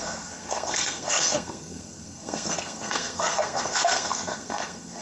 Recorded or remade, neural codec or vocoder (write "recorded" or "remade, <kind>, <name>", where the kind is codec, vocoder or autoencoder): remade, codec, SNAC